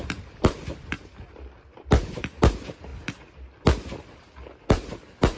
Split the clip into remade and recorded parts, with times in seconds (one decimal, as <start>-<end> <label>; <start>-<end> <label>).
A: 0.0-2.9 remade; 2.9-4.9 recorded; 4.9-5.4 remade